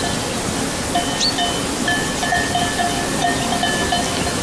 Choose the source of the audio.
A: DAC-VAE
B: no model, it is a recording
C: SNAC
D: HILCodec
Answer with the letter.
B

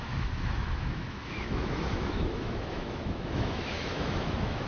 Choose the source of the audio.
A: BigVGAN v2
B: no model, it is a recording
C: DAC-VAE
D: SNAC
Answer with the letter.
C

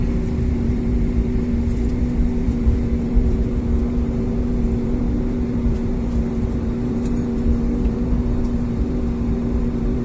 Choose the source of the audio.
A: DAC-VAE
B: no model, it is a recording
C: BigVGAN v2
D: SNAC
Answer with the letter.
C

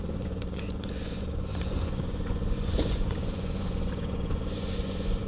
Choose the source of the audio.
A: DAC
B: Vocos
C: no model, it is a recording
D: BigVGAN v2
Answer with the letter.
B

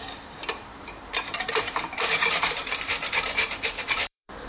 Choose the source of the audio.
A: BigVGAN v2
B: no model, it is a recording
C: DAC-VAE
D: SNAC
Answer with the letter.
A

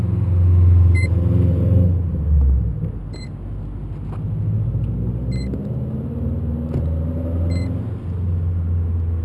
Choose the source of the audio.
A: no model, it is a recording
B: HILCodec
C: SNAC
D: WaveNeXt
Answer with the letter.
A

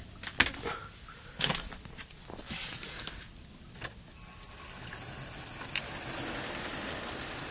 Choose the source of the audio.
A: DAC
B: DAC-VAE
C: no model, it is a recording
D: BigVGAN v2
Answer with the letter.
C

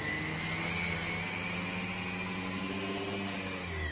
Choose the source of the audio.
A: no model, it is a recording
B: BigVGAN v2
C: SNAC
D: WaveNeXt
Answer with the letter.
A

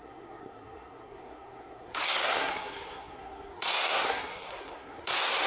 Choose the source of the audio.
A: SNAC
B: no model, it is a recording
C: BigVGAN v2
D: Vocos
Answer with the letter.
A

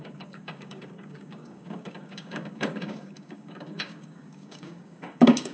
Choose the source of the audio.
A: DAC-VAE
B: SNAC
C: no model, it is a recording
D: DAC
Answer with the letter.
D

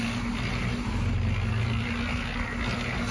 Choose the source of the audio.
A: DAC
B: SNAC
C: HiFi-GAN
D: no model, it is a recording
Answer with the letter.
D